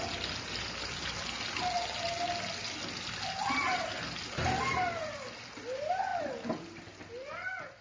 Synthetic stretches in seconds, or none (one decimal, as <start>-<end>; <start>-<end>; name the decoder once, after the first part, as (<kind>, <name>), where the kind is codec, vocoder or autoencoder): none